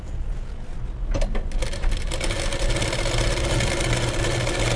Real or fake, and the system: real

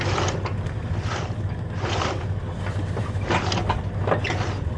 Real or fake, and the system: real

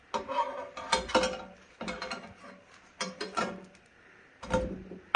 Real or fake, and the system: real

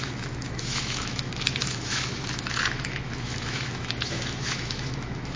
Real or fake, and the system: fake, autoencoder, DAC-VAE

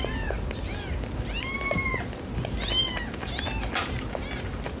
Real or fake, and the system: real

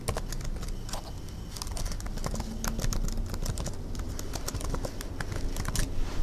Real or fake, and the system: real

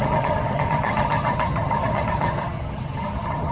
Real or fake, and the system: fake, vocoder, HiFi-GAN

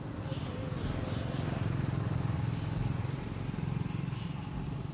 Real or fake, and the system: real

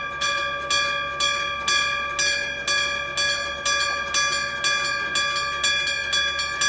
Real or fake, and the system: real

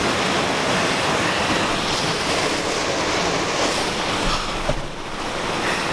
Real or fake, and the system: real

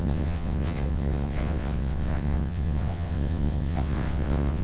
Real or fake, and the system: fake, vocoder, WaveNeXt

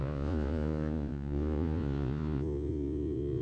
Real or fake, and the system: fake, vocoder, Vocos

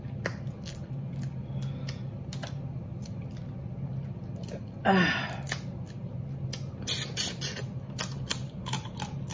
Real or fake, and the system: real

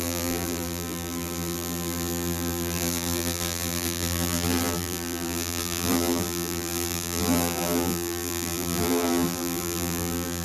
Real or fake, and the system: fake, vocoder, BigVGAN v2